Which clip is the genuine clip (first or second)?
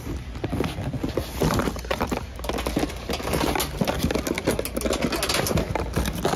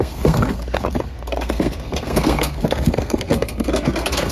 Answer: first